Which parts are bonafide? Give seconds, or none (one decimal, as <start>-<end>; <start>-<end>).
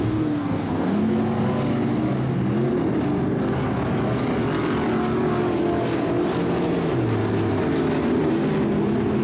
1.0-9.2